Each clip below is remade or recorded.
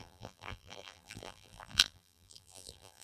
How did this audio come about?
remade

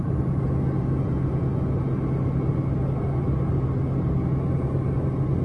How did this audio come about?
recorded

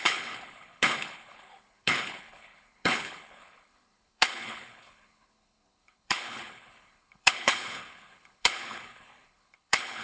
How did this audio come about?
remade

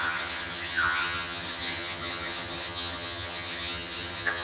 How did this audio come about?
remade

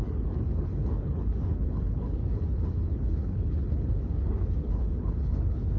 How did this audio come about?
remade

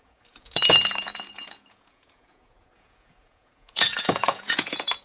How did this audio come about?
remade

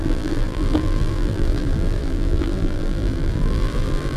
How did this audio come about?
remade